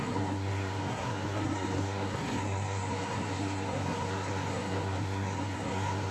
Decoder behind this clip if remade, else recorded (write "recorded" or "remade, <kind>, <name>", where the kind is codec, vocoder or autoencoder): remade, codec, SNAC